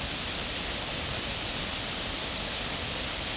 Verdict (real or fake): real